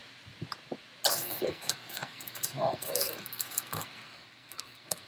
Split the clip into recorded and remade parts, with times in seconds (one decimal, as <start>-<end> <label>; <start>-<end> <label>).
0.0-1.1 recorded; 1.1-5.1 remade